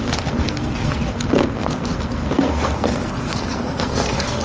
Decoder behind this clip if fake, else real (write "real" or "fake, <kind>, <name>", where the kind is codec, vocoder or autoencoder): fake, codec, SNAC